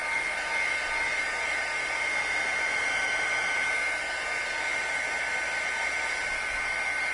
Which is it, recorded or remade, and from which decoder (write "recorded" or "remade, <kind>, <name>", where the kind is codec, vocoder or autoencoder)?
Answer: recorded